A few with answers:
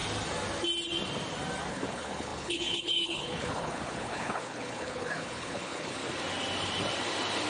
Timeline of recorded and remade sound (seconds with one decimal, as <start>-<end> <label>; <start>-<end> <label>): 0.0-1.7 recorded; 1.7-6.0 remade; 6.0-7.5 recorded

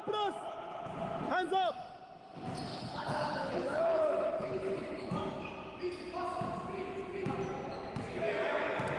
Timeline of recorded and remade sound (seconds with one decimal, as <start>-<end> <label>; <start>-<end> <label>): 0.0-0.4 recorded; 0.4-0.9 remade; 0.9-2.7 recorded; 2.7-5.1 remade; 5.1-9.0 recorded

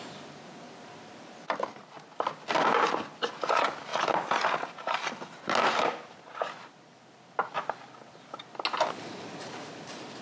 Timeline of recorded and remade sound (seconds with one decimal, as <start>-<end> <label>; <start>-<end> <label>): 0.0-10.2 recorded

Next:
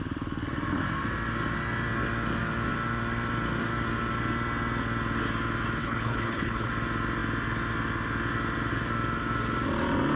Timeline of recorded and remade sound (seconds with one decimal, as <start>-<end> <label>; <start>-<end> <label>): 0.0-5.8 recorded; 5.8-6.7 remade; 6.7-10.2 recorded

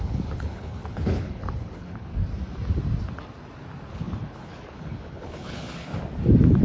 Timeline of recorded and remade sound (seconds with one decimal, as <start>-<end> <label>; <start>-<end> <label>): 0.0-2.1 remade; 2.1-3.9 recorded; 3.9-5.9 remade; 5.9-6.6 recorded

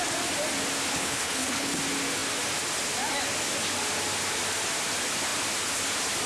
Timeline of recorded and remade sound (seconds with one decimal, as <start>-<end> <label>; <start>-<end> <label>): 0.0-0.9 recorded; 0.9-1.7 remade; 1.7-6.3 recorded

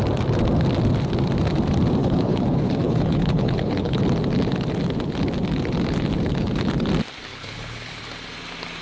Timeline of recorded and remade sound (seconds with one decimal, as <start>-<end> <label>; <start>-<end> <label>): 0.0-2.0 recorded; 2.0-4.0 remade; 4.0-7.3 recorded; 7.3-8.0 remade; 8.0-8.8 recorded